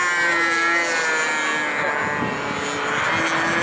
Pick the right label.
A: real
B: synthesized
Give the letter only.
A